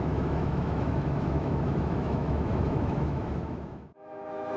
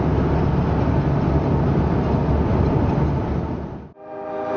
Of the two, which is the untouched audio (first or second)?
second